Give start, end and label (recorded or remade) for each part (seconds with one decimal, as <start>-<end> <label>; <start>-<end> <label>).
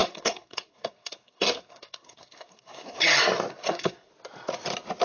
0.0-3.0 remade; 3.0-3.5 recorded; 3.5-4.1 remade; 4.1-5.0 recorded